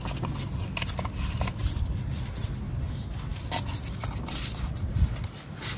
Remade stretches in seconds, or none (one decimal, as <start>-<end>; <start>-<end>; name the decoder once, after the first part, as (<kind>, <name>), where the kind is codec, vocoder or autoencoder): 1.6-2.3 (vocoder, BigVGAN v2)